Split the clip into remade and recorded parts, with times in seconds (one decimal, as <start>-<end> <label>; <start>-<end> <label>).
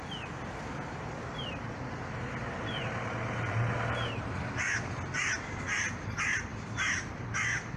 0.0-6.5 recorded; 6.5-7.8 remade